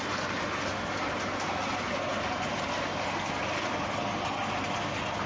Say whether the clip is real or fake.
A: real